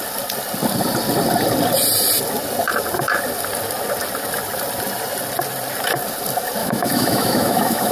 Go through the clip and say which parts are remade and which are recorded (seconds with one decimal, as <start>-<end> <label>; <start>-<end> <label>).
0.0-6.6 recorded; 6.6-7.9 remade